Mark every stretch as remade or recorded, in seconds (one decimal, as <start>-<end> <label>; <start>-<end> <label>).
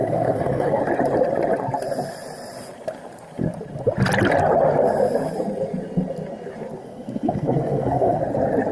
0.0-0.8 remade; 0.8-6.8 recorded; 6.8-8.2 remade; 8.2-8.7 recorded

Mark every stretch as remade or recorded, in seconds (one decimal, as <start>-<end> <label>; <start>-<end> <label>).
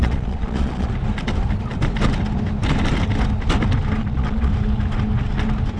0.0-0.9 remade; 0.9-4.0 recorded; 4.0-4.5 remade; 4.5-5.8 recorded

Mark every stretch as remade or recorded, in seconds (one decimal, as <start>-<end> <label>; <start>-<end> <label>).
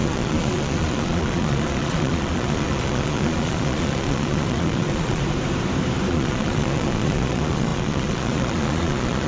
0.0-5.2 remade; 5.2-6.1 recorded; 6.1-9.3 remade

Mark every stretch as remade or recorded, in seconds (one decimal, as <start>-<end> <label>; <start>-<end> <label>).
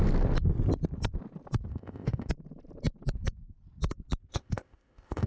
0.0-1.7 recorded; 1.7-2.3 remade; 2.3-4.3 recorded; 4.3-5.3 remade